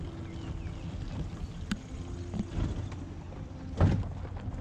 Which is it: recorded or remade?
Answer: recorded